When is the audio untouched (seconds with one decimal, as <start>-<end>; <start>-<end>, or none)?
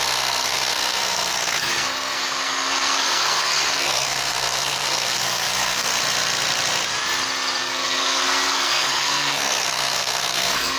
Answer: 5.9-7.6